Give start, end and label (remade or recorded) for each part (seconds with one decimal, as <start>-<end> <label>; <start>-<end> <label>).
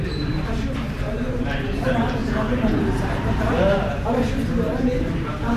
0.0-2.2 remade; 2.2-2.8 recorded; 2.8-4.2 remade; 4.2-4.8 recorded; 4.8-5.6 remade